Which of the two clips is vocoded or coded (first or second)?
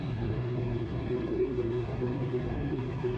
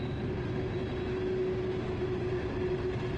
first